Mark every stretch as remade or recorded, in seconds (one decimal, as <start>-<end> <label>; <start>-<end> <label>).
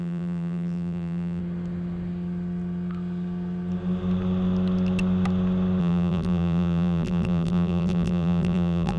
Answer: 0.0-1.4 remade; 1.4-5.8 recorded; 5.8-9.0 remade